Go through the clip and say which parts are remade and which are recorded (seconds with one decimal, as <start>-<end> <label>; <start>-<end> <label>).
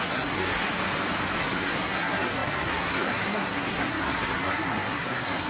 0.0-0.8 remade; 0.8-1.4 recorded; 1.4-5.5 remade